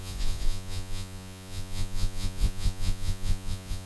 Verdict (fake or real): fake